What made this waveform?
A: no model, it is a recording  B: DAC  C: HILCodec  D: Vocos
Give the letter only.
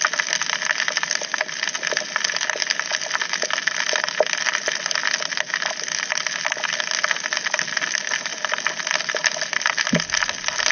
A